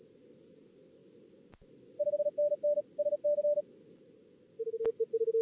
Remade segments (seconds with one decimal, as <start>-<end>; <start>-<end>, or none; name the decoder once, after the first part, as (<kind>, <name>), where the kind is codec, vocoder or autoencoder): none